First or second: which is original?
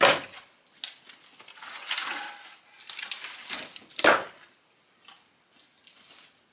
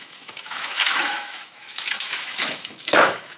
first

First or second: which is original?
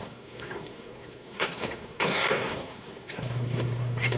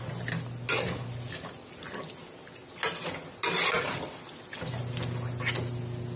second